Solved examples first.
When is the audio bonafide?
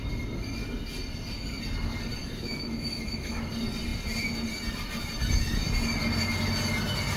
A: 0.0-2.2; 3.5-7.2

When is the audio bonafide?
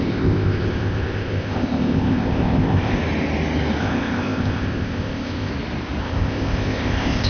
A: 3.0-3.8; 5.5-6.0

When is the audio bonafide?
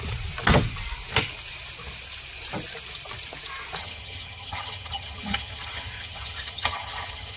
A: 0.0-3.8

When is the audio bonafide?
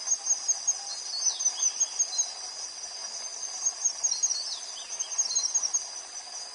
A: 0.0-6.5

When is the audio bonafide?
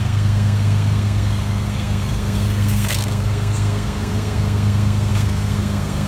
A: none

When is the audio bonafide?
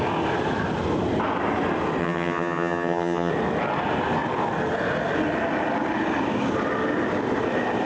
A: 0.0-2.0; 3.3-7.9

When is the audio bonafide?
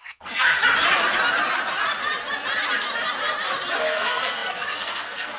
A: 0.6-3.8